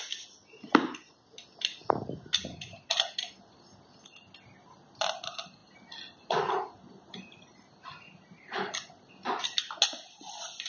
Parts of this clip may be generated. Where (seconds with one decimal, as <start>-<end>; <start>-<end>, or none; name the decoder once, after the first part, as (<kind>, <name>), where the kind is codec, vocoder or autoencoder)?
none